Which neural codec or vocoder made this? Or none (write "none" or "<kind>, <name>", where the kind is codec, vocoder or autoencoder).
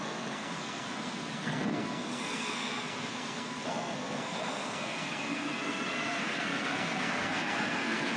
codec, SNAC